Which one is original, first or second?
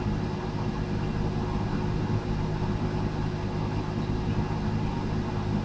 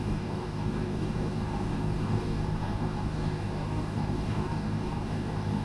first